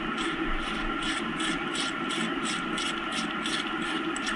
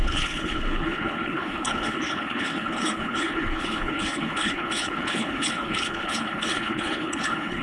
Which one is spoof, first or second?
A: second